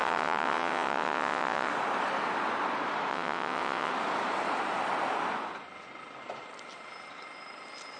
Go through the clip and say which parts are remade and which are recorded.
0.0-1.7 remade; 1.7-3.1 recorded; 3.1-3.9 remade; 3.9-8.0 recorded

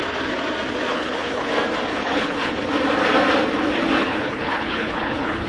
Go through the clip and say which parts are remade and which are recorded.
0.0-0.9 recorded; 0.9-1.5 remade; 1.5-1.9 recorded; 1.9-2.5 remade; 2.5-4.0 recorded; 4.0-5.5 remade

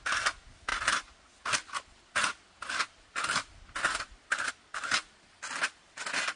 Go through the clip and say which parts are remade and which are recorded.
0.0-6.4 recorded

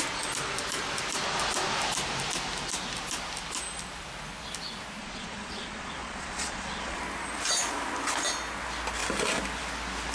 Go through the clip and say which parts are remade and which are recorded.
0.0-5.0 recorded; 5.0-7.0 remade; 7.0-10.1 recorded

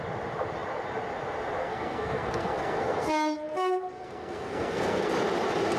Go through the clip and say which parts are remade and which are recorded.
0.0-1.6 recorded; 1.6-5.1 remade; 5.1-5.8 recorded